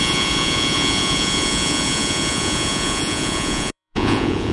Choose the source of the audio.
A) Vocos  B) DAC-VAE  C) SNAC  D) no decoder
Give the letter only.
A